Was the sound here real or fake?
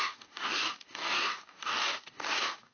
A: fake